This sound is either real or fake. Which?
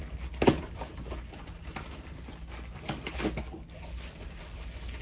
real